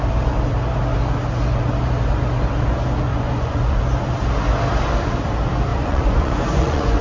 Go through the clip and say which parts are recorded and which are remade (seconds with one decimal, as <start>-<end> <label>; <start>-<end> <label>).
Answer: 0.0-3.1 recorded; 3.1-3.8 remade; 3.8-5.7 recorded; 5.7-7.0 remade